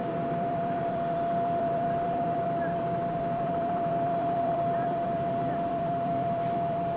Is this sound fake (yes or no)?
yes